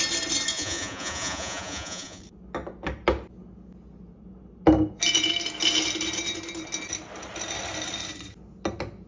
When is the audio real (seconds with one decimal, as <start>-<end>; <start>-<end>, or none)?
0.0-0.5; 2.2-9.1